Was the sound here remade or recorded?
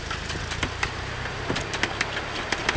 recorded